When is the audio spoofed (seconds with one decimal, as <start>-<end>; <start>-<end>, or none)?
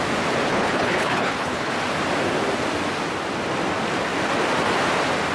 0.5-1.7